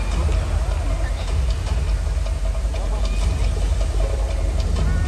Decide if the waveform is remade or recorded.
recorded